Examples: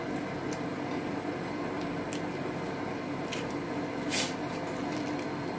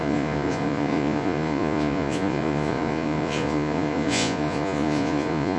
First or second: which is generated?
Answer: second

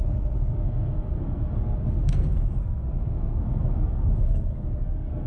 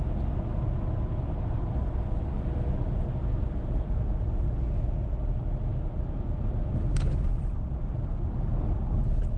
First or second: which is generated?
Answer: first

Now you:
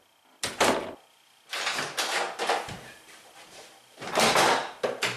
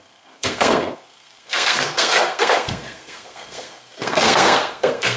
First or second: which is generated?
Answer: second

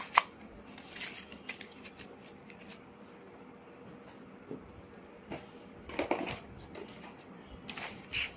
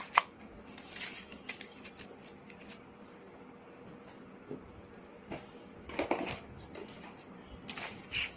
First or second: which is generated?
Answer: first